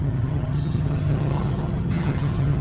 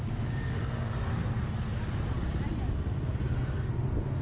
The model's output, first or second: first